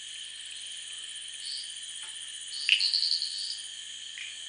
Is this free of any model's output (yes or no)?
yes